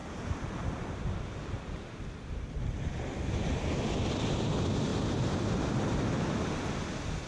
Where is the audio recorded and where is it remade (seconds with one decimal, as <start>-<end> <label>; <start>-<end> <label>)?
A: 0.0-7.3 recorded